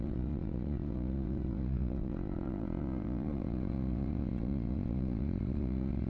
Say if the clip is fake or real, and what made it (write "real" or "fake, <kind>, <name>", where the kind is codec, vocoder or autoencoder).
fake, vocoder, Vocos